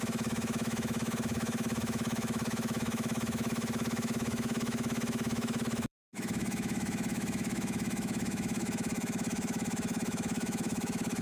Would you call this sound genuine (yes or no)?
no